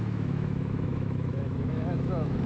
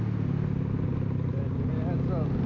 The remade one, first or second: first